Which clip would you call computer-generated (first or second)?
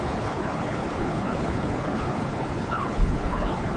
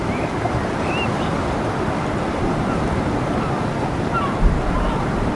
first